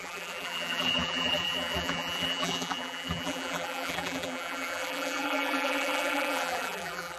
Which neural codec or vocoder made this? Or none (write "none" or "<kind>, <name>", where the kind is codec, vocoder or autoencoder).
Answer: vocoder, BigVGAN v2